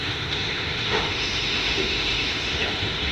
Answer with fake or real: fake